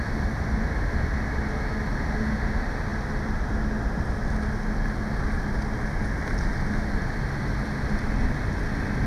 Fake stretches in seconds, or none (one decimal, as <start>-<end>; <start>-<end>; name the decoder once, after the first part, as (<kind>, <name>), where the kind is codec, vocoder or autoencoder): none